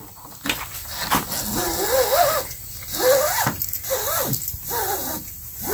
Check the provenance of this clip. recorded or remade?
recorded